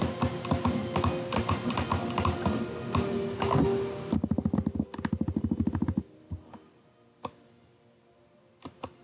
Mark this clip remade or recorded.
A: recorded